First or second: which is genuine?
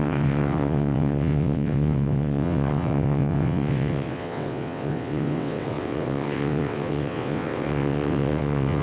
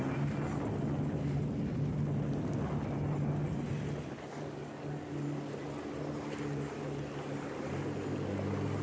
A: second